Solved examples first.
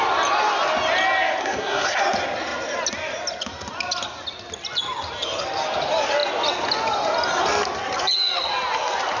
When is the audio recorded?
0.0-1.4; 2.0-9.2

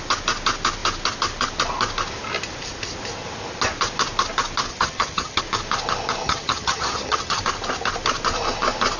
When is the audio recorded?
0.0-4.7; 5.4-6.2; 7.4-9.0

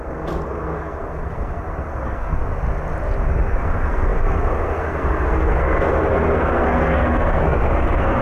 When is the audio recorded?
2.4-3.3

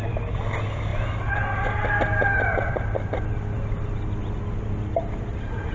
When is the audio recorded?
0.0-5.7

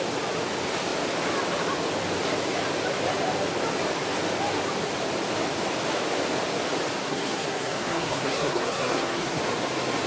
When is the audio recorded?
0.0-7.0; 9.4-10.1

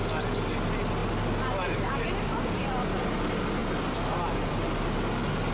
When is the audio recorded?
0.0-5.5

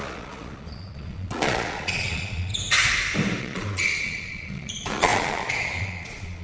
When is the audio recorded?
2.5-3.4

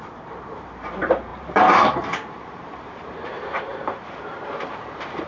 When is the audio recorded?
none